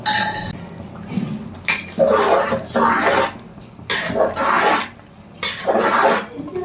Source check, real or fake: real